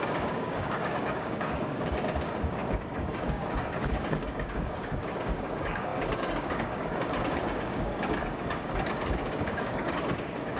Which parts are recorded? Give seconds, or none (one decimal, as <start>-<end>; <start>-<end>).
none